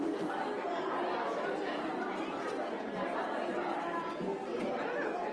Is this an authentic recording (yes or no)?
yes